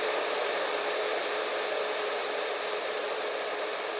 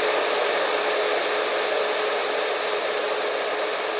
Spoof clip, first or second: first